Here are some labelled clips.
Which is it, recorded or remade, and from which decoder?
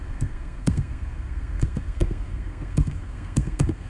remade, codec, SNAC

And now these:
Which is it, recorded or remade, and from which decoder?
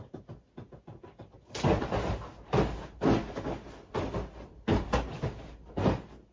recorded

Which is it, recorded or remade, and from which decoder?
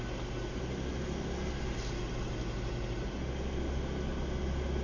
recorded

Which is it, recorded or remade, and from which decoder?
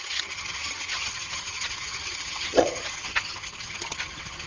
remade, vocoder, HiFi-GAN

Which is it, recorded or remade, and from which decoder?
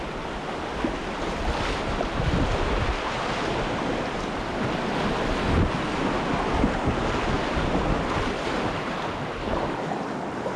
recorded